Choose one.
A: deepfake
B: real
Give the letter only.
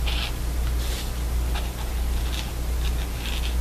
B